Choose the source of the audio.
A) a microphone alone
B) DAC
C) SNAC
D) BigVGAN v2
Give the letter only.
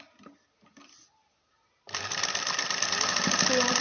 A